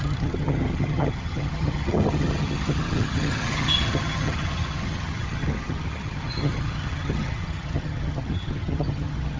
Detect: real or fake fake